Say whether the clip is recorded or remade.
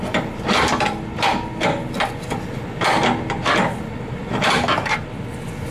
recorded